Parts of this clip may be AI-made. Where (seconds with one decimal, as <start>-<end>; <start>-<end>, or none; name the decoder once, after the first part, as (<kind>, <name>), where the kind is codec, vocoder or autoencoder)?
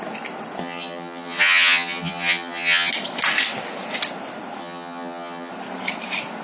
0.6-2.9 (vocoder, HiFi-GAN); 4.6-5.5